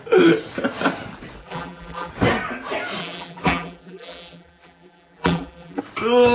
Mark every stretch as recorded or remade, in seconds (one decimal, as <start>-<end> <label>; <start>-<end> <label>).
0.0-1.4 recorded; 1.4-2.1 remade; 2.1-3.0 recorded; 3.0-5.8 remade; 5.8-6.3 recorded